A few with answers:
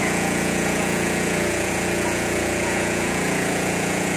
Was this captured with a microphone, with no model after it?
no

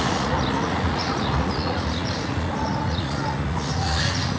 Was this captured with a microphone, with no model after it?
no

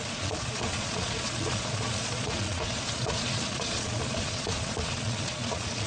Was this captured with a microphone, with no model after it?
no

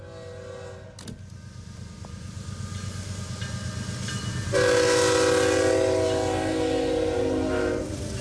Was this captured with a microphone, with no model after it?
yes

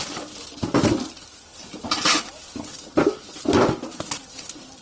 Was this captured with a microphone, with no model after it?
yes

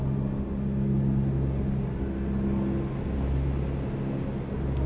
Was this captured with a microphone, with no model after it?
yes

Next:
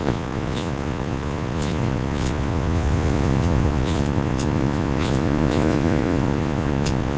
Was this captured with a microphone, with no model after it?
no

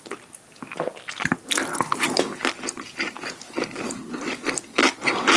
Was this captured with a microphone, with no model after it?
yes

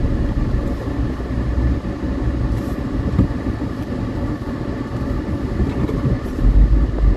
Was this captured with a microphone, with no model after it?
yes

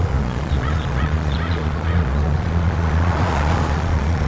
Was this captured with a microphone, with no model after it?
no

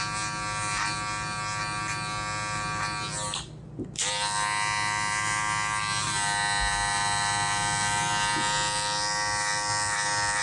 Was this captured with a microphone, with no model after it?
yes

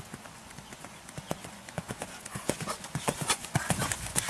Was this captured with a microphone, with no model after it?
no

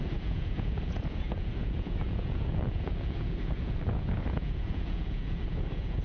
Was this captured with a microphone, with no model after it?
no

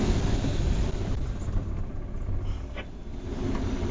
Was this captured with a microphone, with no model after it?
yes